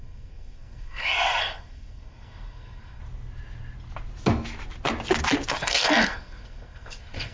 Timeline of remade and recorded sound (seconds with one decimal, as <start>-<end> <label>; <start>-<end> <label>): 0.0-3.0 remade; 3.0-5.5 recorded; 5.5-7.3 remade